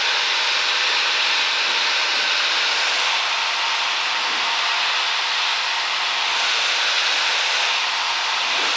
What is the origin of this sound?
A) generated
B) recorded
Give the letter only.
B